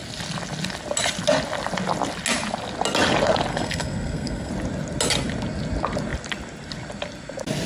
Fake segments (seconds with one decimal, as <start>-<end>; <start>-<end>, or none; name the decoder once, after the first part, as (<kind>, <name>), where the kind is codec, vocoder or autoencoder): 3.5-4.5 (codec, SNAC)